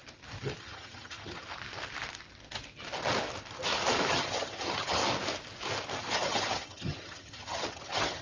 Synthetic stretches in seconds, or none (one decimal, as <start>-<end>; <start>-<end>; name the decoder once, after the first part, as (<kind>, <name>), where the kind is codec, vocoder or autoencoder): 0.6-1.5 (vocoder, HiFi-GAN); 4.1-5.0; 6.0-8.2